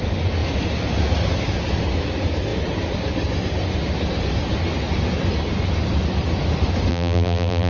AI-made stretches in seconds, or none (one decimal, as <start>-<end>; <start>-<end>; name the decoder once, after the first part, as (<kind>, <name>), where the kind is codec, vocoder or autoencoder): 6.9-7.7 (vocoder, BigVGAN v2)